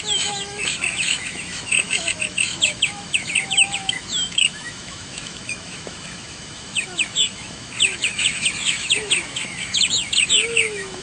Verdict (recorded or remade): remade